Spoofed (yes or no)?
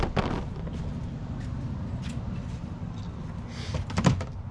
no